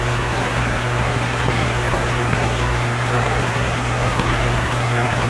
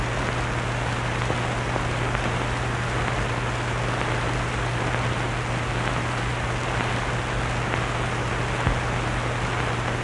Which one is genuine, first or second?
second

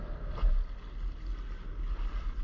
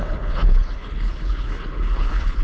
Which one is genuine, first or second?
first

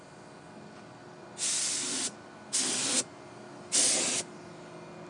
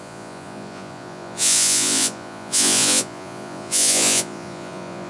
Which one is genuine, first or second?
first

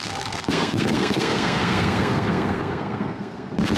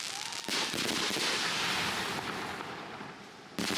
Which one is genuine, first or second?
second